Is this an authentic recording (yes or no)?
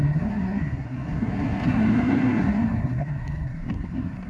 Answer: no